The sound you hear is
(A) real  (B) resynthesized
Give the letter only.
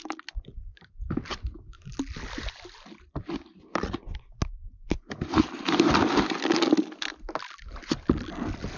A